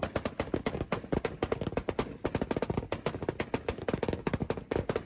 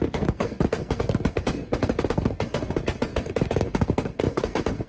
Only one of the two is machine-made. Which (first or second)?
second